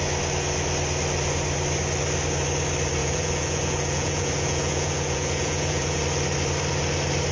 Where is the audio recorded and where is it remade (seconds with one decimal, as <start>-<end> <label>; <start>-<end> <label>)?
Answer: 0.0-3.0 recorded; 3.0-6.0 remade; 6.0-7.3 recorded

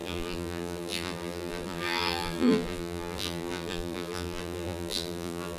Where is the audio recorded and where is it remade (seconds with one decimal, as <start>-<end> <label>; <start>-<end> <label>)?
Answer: 0.0-5.6 remade

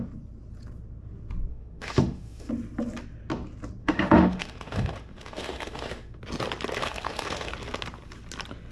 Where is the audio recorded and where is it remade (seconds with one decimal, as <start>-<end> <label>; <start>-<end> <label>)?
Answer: 0.0-1.5 recorded; 1.5-2.5 remade; 2.5-3.8 recorded; 3.8-6.2 remade; 6.2-6.8 recorded; 6.8-7.5 remade; 7.5-8.7 recorded

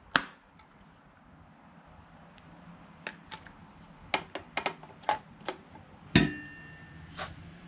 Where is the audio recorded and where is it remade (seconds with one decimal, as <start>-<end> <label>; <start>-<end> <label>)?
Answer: 0.0-7.7 recorded

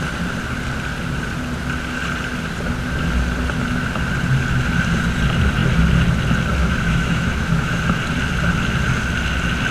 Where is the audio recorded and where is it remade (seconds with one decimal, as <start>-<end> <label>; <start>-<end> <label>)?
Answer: 0.0-6.6 recorded; 6.6-8.0 remade; 8.0-9.7 recorded